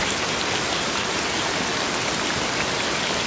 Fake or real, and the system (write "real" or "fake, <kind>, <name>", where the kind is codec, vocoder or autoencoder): real